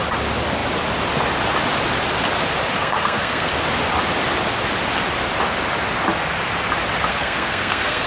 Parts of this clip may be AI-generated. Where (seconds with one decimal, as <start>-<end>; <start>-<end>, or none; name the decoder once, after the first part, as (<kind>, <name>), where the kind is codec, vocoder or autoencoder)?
2.7-3.5 (codec, SNAC); 7.1-8.1